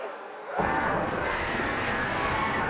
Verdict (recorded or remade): remade